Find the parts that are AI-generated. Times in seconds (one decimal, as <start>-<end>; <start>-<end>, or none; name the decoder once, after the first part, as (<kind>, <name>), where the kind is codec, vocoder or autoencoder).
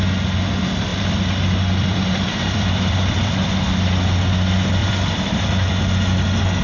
0.9-3.5 (vocoder, BigVGAN v2); 4.8-5.7